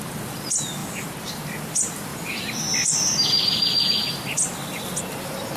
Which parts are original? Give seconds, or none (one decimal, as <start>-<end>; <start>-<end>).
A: 0.0-5.6